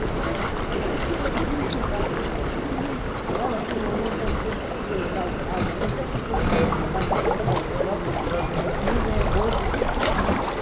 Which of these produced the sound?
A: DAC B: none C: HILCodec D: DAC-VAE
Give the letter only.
B